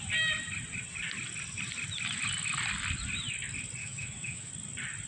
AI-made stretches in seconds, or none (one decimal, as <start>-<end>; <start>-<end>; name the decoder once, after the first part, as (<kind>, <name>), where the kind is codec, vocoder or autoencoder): 3.8-4.5 (autoencoder, DAC-VAE)